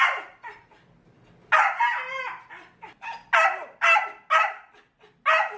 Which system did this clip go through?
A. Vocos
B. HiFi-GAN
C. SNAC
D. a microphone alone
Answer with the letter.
D